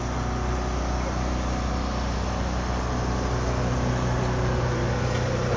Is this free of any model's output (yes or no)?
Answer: yes